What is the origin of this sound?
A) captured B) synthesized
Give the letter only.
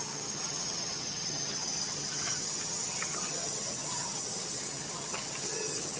B